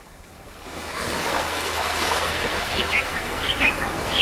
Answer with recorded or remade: remade